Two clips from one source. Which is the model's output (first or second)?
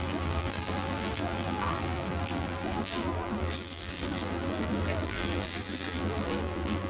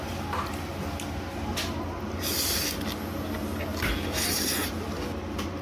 first